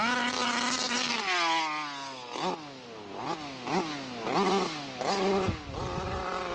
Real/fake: real